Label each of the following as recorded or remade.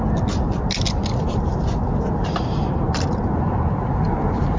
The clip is recorded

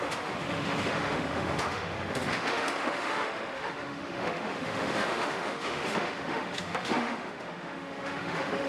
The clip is remade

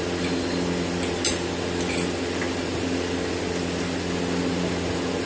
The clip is recorded